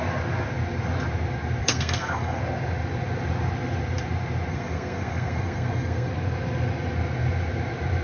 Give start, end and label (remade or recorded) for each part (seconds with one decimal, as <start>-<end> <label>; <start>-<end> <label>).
0.0-1.6 recorded; 1.6-2.4 remade; 2.4-4.5 recorded; 4.5-6.1 remade; 6.1-8.0 recorded